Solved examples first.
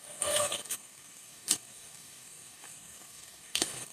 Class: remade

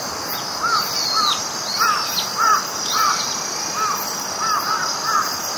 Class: recorded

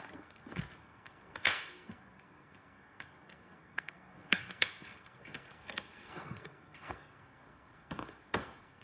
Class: remade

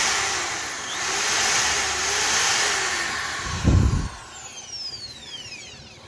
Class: recorded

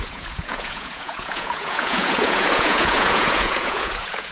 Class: remade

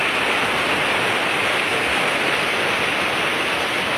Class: recorded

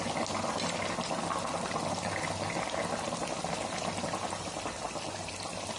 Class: recorded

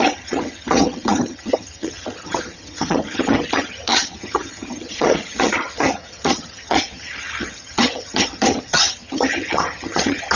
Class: remade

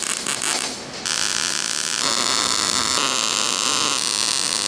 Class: recorded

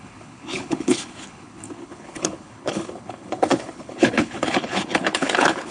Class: remade